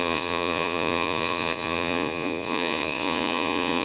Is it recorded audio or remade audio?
remade